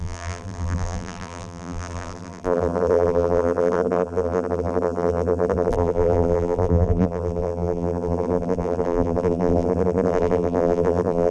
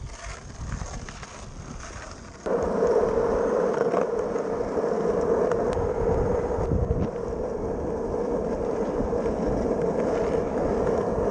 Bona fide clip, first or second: second